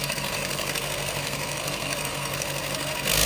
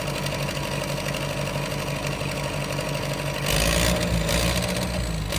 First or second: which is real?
second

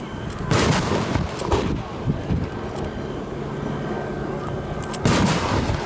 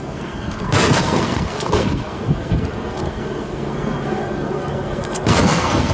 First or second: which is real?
first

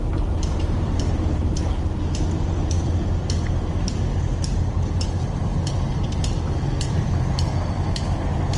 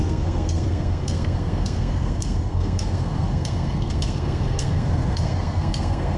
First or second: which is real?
first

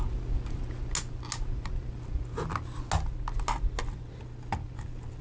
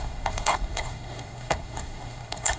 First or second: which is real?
first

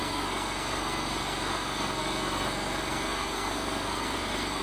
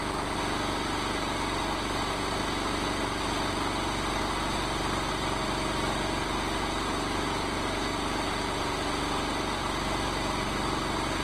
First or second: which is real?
second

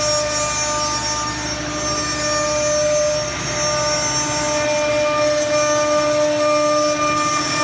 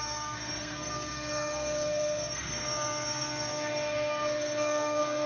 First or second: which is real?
first